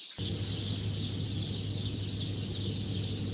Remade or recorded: recorded